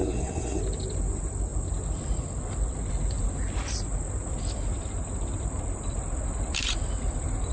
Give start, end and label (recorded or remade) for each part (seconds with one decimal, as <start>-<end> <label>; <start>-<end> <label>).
0.0-0.6 remade; 0.6-7.5 recorded